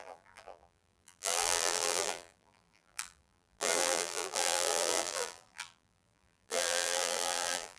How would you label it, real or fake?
fake